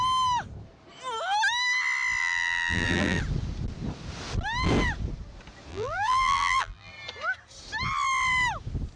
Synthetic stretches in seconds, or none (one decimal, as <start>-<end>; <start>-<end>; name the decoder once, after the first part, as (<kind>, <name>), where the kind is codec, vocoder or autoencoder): 2.2-3.2 (vocoder, BigVGAN v2); 5.7-6.9